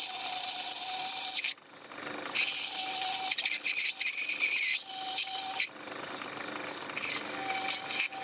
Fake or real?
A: real